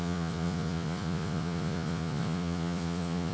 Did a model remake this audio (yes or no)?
yes